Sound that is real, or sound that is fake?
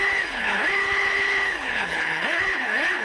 fake